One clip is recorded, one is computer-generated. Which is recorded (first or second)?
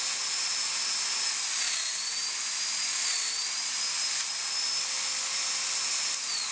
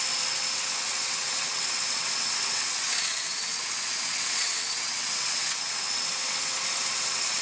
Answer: first